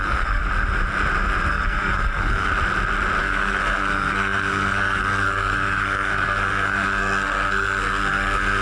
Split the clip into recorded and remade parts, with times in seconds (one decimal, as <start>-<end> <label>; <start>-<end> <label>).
0.0-0.4 remade; 0.4-1.5 recorded; 1.5-2.5 remade; 2.5-3.2 recorded; 3.2-8.6 remade